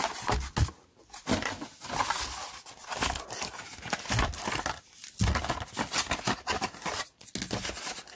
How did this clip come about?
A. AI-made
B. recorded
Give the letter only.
B